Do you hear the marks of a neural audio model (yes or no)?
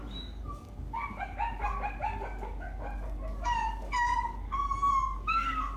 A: yes